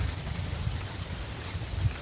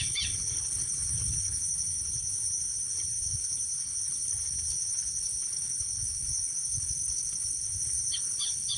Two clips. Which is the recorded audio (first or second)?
first